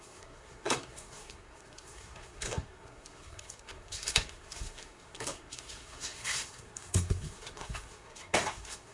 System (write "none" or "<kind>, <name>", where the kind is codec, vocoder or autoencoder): codec, SNAC